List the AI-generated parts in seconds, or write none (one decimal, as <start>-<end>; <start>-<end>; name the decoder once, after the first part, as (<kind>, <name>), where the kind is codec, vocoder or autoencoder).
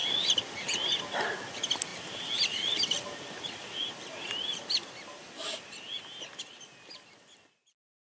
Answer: none